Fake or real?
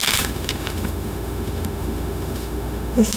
fake